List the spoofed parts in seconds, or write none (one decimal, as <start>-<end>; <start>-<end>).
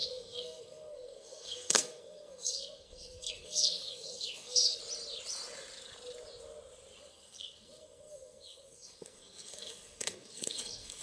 0.0-4.8; 7.1-11.0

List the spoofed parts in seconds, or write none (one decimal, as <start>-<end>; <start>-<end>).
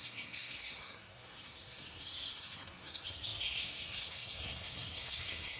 0.0-5.6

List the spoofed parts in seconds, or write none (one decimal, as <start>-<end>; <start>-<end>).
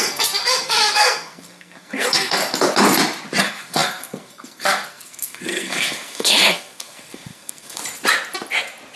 0.0-2.4; 3.4-7.8